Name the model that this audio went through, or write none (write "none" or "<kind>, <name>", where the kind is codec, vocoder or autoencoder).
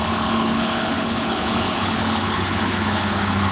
codec, HILCodec